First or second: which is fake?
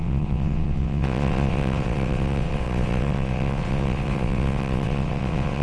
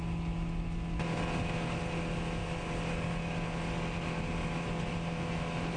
first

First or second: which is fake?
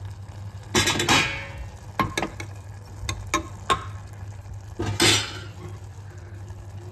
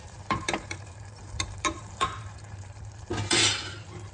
second